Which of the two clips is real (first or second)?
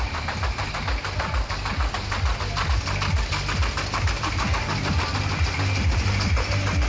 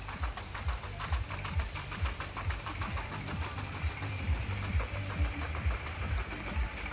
first